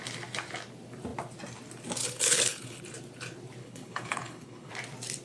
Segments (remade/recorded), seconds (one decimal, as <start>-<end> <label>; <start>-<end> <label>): 0.0-2.0 recorded; 2.0-2.8 remade; 2.8-3.6 recorded; 3.6-4.7 remade; 4.7-5.2 recorded